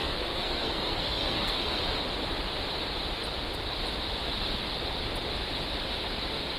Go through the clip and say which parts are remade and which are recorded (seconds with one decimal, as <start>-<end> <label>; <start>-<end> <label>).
0.0-1.8 remade; 1.8-6.6 recorded

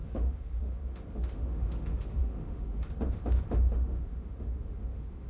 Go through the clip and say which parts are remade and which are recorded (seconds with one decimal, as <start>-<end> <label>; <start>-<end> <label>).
0.0-5.3 remade

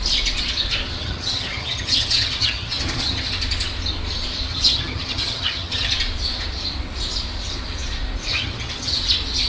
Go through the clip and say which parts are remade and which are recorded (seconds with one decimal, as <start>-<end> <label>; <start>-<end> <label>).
0.0-1.0 recorded; 1.0-3.3 remade; 3.3-4.5 recorded; 4.5-5.9 remade; 5.9-8.3 recorded; 8.3-9.0 remade; 9.0-9.5 recorded

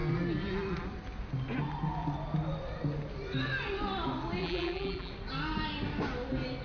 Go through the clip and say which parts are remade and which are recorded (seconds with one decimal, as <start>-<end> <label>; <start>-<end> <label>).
0.0-4.4 recorded; 4.4-5.1 remade; 5.1-6.6 recorded